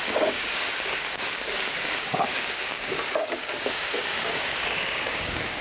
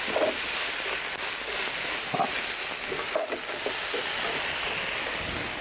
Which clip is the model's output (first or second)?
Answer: first